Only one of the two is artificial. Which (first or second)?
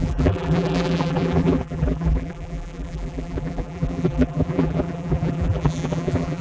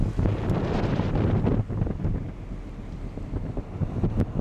first